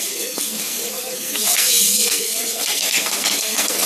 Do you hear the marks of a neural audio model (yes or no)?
yes